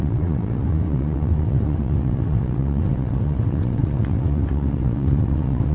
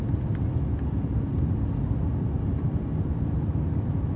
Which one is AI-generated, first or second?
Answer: first